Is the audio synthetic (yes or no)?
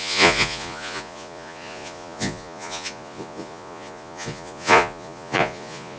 yes